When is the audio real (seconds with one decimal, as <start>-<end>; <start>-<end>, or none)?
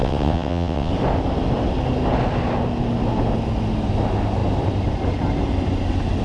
0.9-6.2